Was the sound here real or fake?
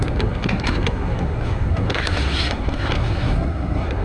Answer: fake